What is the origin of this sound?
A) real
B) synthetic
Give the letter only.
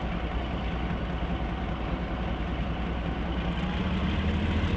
A